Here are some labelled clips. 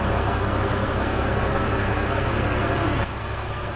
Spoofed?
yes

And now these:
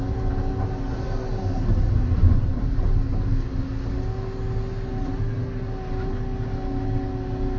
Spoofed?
no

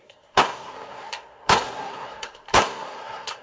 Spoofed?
yes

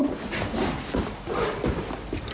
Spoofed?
no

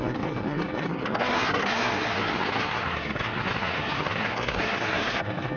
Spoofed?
yes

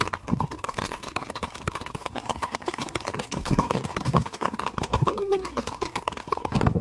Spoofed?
yes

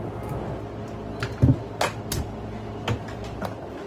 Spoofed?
no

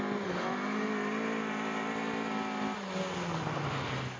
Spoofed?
no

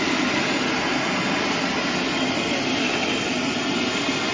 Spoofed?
no